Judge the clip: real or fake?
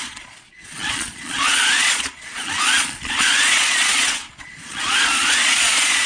fake